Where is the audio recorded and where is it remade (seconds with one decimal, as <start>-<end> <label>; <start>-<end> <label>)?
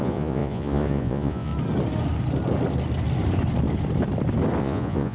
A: 0.0-1.5 remade; 1.5-4.6 recorded; 4.6-5.1 remade